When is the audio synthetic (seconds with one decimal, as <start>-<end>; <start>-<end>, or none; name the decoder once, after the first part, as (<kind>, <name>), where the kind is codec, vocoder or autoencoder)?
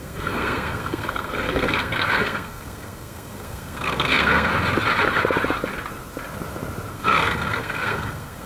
0.0-4.5 (codec, SNAC); 6.9-8.5